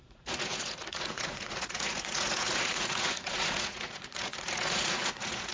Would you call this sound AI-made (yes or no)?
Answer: yes